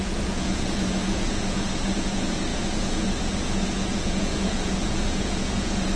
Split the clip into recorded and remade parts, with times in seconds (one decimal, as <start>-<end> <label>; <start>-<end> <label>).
0.0-6.0 remade

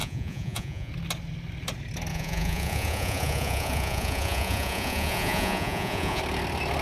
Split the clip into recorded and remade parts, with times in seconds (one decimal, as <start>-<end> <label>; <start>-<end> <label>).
0.0-0.9 remade; 0.9-2.1 recorded; 2.1-6.2 remade; 6.2-6.8 recorded

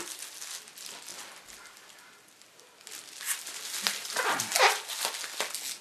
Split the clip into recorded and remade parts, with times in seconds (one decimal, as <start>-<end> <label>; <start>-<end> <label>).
0.0-5.8 recorded

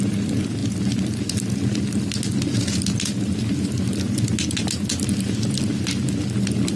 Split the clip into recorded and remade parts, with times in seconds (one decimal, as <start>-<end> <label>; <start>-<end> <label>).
0.0-6.8 recorded

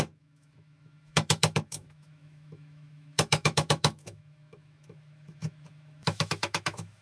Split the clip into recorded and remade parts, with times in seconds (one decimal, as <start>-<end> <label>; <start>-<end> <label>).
0.0-7.0 remade

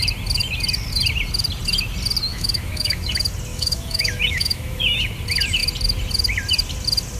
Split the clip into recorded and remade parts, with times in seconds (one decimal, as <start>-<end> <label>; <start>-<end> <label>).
0.0-2.3 recorded; 2.3-3.1 remade; 3.1-3.5 recorded; 3.5-5.1 remade; 5.1-7.2 recorded